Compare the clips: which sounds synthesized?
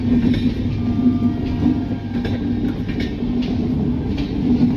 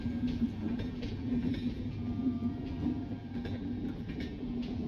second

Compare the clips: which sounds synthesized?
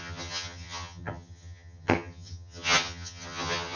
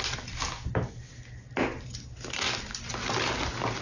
first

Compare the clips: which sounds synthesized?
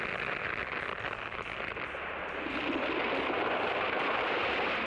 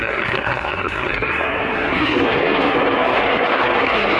second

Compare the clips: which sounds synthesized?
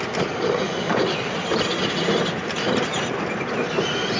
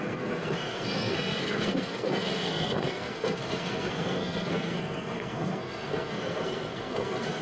second